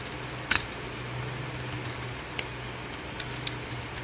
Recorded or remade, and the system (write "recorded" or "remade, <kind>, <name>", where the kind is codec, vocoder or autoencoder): recorded